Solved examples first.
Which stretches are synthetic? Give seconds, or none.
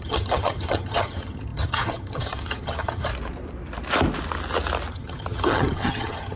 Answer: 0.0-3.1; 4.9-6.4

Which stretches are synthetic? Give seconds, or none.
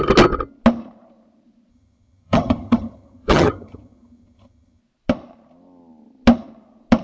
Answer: 1.7-4.8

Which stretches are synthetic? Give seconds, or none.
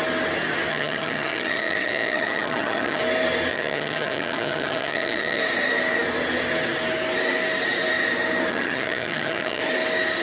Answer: 0.7-3.0; 3.5-5.4; 8.5-9.6